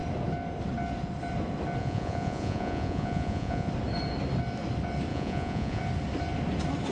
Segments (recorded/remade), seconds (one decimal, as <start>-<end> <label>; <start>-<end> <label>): 0.0-1.8 recorded; 1.8-3.7 remade; 3.7-5.1 recorded; 5.1-5.8 remade; 5.8-6.9 recorded